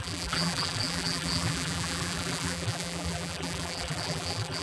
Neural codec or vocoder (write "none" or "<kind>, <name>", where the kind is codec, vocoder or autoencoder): vocoder, BigVGAN v2